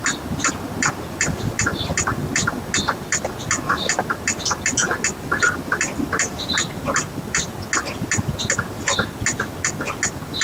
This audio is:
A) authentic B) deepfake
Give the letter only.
A